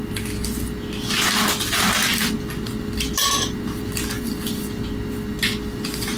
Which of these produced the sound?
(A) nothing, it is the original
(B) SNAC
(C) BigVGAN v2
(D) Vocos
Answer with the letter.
A